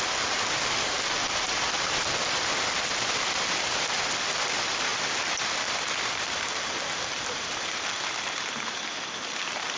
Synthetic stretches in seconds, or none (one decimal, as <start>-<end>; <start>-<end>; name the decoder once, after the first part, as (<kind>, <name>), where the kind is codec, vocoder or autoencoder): none